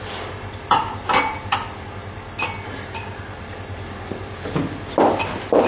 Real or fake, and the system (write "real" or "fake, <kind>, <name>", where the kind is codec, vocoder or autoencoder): real